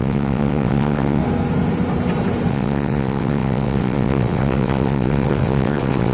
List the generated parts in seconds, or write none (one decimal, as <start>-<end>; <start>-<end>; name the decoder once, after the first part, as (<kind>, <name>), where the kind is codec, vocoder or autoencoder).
0.0-1.2 (vocoder, WaveNeXt); 2.5-6.1